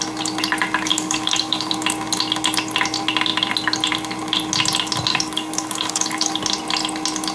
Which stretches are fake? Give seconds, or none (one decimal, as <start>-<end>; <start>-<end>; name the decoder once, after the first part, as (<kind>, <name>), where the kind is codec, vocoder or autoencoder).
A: 0.9-1.7 (codec, DAC); 5.1-6.4

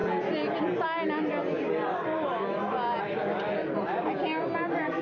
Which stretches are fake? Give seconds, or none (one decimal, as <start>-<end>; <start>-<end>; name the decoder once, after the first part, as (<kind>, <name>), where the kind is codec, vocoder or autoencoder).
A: none

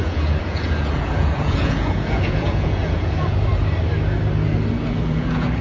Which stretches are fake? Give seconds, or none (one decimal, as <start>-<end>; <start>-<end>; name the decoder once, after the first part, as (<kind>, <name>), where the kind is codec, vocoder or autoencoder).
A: 0.0-3.5 (vocoder, Vocos); 4.9-5.6